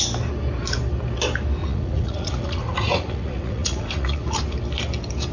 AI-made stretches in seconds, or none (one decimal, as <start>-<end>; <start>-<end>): 1.6-4.3